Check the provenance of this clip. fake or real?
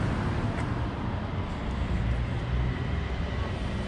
real